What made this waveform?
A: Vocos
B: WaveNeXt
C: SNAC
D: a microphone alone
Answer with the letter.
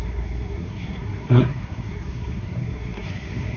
C